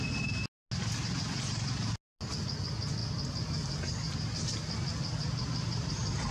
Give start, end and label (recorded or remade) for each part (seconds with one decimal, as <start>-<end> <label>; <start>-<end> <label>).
0.0-3.0 recorded; 3.0-4.2 remade; 4.2-6.3 recorded